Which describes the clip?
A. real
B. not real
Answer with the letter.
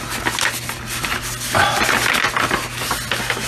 A